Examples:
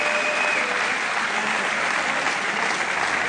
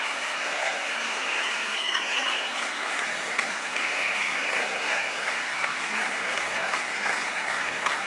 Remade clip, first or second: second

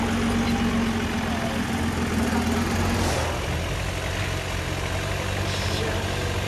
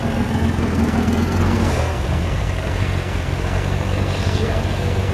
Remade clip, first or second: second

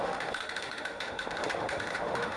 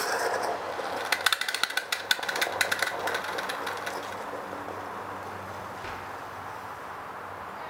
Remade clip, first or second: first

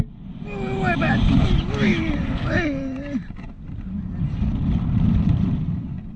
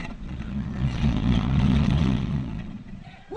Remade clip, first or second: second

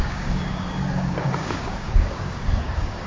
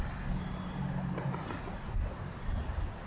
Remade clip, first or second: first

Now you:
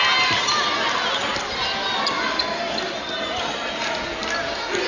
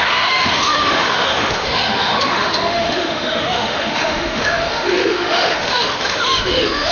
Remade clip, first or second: second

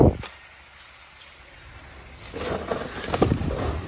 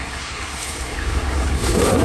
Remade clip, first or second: second